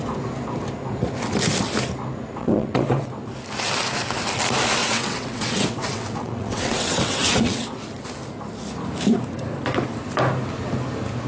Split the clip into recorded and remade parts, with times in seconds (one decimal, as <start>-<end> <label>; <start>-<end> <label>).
0.0-2.4 recorded; 2.4-3.1 remade; 3.1-4.8 recorded; 4.8-7.8 remade; 7.8-11.3 recorded